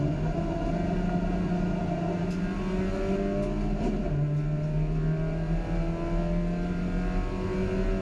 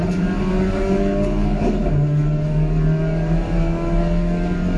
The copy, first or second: second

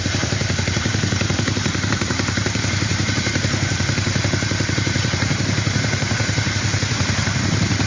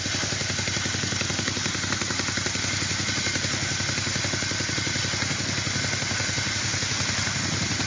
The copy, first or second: first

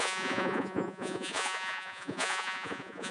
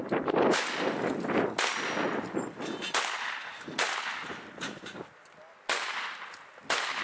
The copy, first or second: first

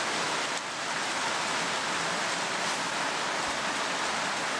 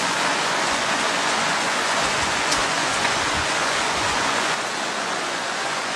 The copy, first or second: second